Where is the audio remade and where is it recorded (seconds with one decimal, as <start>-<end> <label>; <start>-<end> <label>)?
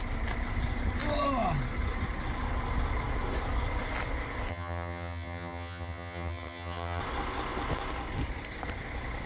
0.0-4.5 recorded; 4.5-7.0 remade; 7.0-9.3 recorded